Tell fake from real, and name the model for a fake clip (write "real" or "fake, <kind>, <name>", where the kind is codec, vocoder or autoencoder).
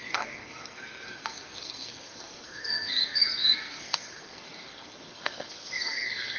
fake, codec, SNAC